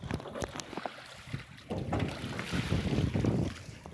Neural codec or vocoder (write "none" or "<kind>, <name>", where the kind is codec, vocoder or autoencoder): none